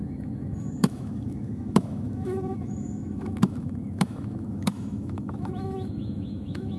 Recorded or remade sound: remade